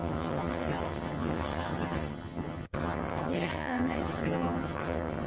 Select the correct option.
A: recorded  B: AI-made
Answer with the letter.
B